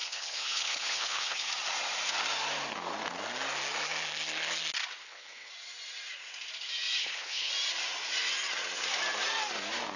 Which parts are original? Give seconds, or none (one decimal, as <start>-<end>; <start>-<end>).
1.5-5.0; 5.5-7.0; 7.5-10.0